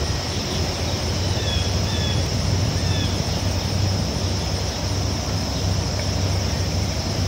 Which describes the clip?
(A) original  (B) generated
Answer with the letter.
A